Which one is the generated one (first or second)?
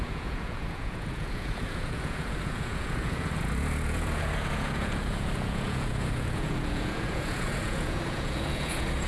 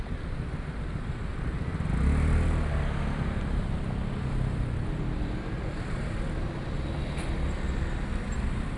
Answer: first